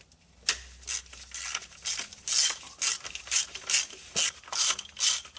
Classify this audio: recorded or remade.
recorded